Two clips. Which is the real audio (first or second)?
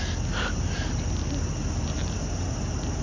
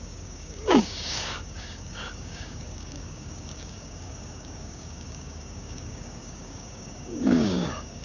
first